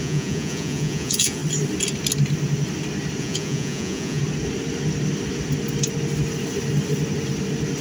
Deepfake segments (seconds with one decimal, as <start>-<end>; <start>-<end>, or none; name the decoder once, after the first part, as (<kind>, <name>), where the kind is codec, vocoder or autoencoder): 0.0-1.4 (vocoder, Vocos); 3.2-4.2